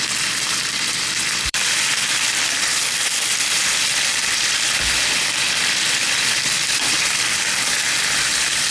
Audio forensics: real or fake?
fake